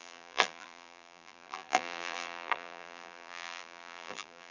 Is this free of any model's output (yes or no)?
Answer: no